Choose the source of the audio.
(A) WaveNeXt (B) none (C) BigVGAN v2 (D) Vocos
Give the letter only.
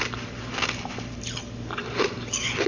B